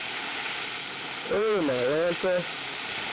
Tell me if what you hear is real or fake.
fake